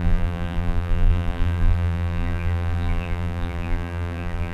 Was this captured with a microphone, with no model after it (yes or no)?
no